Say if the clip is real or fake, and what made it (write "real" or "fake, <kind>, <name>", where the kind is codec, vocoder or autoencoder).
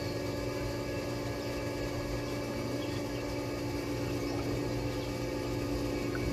real